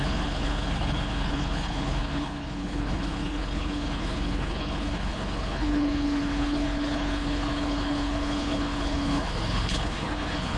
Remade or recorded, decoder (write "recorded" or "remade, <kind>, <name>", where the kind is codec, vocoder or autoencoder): remade, codec, HILCodec